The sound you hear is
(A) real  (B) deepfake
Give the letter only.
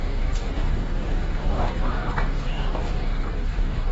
B